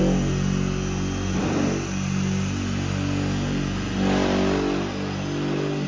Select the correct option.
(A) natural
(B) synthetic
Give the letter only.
A